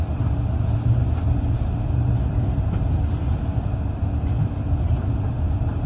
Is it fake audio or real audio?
real